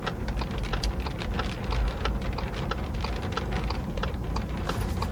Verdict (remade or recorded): recorded